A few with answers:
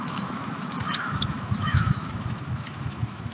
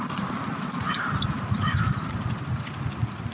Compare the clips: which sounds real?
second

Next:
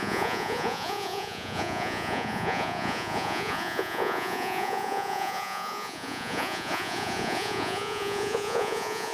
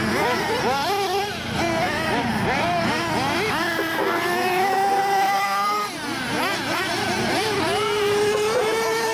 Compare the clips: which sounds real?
second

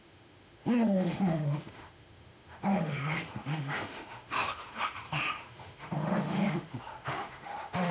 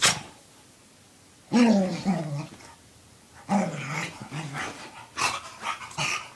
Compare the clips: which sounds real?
second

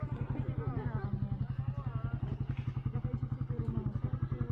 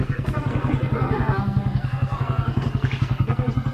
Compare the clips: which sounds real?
first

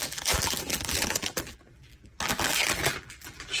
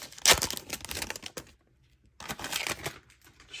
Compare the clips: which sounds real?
second